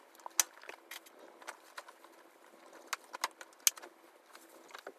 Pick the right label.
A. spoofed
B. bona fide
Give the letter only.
B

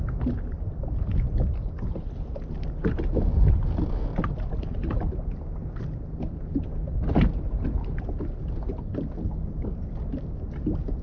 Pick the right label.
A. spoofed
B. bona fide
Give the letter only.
B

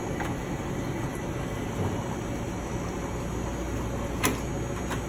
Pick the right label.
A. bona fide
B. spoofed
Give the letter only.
A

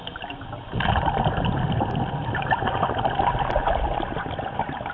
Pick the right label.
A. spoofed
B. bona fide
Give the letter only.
B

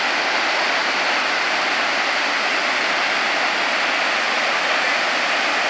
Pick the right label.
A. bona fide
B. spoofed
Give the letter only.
A